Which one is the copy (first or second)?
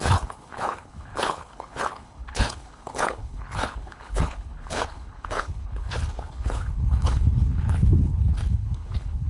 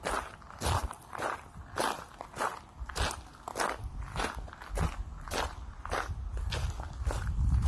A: first